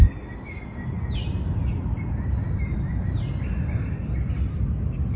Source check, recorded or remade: recorded